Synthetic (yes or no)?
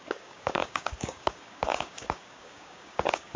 yes